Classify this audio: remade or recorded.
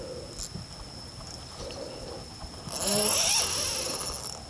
recorded